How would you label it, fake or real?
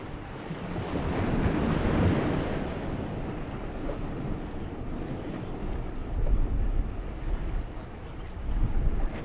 real